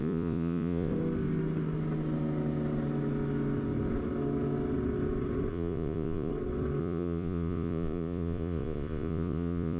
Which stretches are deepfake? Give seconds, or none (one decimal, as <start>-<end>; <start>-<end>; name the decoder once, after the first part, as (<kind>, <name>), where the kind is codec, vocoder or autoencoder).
0.0-0.9 (vocoder, Vocos); 5.5-6.3; 6.8-9.8